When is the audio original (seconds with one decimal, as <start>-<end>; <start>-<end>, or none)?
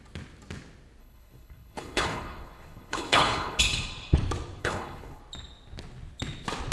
0.0-1.0; 3.6-4.6; 5.2-6.7